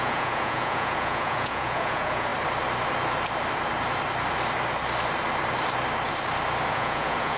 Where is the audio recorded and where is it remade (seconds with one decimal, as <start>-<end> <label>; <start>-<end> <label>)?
0.0-2.3 remade; 2.3-6.7 recorded; 6.7-7.4 remade